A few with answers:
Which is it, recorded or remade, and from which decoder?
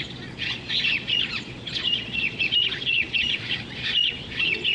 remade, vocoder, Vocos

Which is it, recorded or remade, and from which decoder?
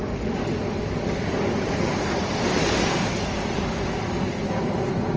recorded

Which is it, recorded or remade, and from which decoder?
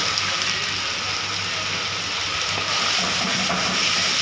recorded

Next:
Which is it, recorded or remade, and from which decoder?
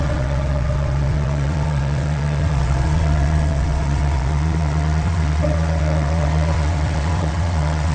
remade, vocoder, WaveNeXt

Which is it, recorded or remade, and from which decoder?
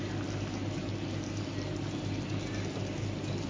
recorded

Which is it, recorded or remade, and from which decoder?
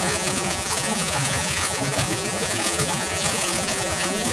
remade, vocoder, Vocos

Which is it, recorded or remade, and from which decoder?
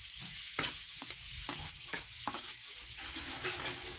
remade, codec, DAC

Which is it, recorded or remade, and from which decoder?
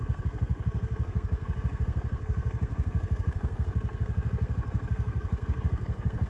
remade, codec, SNAC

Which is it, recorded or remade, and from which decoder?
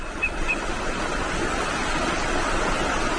recorded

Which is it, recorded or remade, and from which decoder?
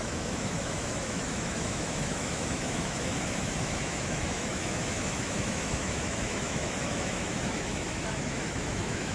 remade, autoencoder, DAC-VAE